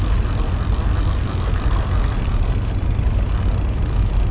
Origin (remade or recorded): recorded